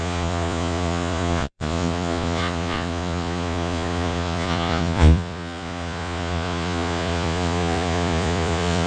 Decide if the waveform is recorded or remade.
remade